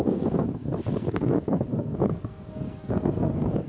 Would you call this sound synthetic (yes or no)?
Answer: yes